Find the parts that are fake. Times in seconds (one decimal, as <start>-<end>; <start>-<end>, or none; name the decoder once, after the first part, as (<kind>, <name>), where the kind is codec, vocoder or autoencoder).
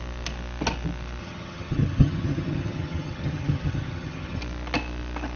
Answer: 1.2-4.4 (vocoder, HiFi-GAN)